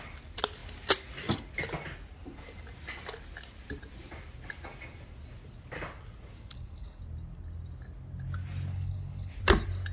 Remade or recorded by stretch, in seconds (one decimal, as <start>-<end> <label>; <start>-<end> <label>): 0.0-6.5 recorded; 6.5-7.0 remade; 7.0-8.7 recorded; 8.7-9.4 remade; 9.4-9.9 recorded